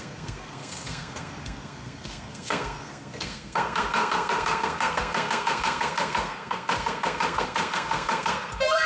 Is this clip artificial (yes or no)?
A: yes